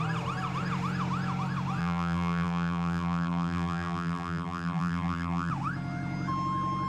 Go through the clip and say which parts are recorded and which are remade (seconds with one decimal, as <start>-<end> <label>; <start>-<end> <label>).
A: 0.0-1.8 recorded; 1.8-5.5 remade; 5.5-6.9 recorded